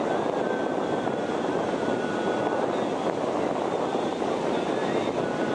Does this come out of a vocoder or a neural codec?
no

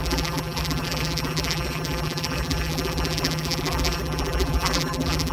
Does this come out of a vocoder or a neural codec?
yes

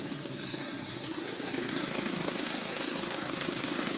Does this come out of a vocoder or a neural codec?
yes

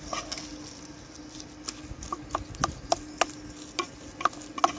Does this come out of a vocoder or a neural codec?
no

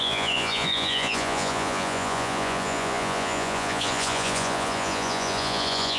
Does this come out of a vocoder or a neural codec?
yes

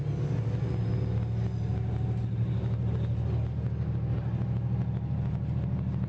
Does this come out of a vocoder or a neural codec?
no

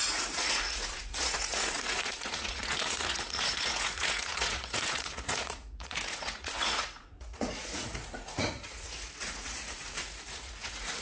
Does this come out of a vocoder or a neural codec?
yes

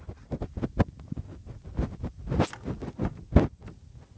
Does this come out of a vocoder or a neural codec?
no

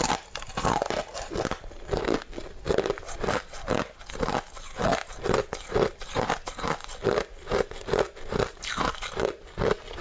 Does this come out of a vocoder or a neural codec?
no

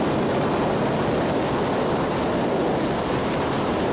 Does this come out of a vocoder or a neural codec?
no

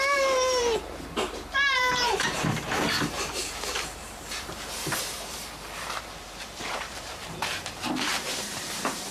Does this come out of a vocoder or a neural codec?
yes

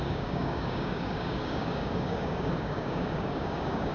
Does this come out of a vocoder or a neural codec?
yes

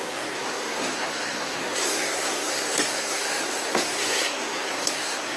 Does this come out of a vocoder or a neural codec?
yes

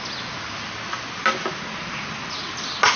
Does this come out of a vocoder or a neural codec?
no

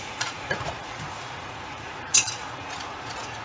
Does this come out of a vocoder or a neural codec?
yes